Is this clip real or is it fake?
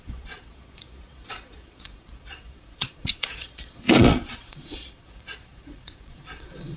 fake